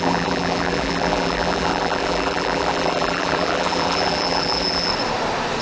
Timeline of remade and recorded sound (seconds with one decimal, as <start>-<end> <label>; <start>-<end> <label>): 0.0-4.9 remade; 4.9-5.6 recorded